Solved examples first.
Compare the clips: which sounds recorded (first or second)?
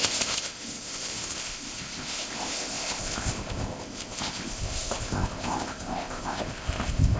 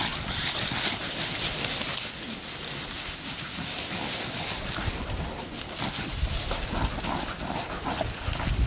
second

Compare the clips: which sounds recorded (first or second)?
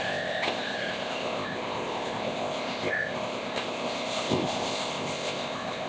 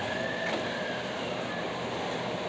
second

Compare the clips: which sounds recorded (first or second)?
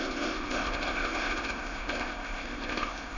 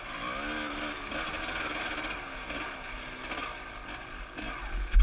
second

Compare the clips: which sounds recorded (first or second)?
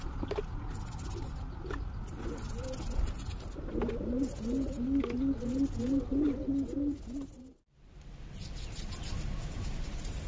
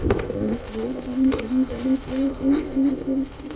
first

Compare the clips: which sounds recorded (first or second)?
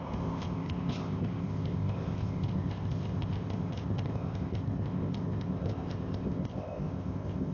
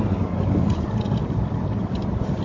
second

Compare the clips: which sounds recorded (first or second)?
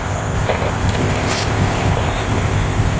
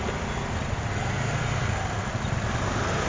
second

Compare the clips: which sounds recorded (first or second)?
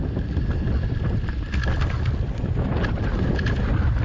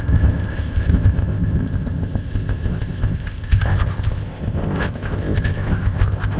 first